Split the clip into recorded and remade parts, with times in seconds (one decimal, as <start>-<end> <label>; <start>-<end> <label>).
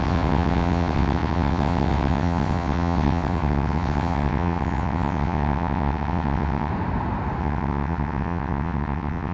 0.0-6.7 remade; 6.7-7.4 recorded; 7.4-9.3 remade